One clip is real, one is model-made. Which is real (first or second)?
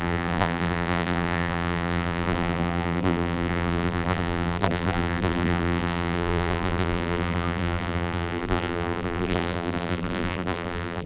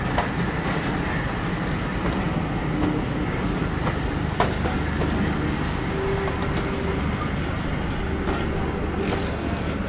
second